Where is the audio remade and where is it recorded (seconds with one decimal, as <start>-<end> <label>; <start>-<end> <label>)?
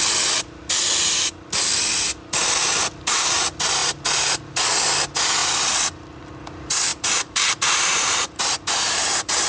0.0-3.8 recorded; 3.8-4.4 remade; 4.4-6.9 recorded; 6.9-9.5 remade